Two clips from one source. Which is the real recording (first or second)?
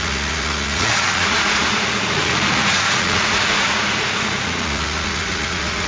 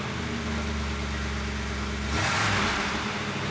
second